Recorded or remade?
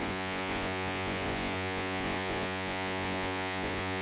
remade